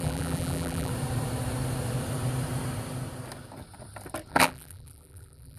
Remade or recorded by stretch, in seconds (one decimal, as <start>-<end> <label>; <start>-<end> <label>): 0.0-0.9 remade; 0.9-4.3 recorded; 4.3-5.6 remade